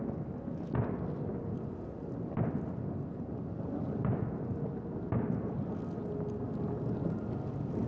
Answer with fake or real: real